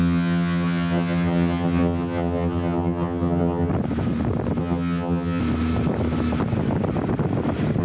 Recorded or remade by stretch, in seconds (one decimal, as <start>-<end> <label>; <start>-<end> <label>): 0.0-3.7 remade; 3.7-4.6 recorded; 4.6-5.4 remade; 5.4-7.8 recorded